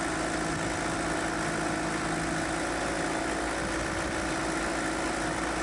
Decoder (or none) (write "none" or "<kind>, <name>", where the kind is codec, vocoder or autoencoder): none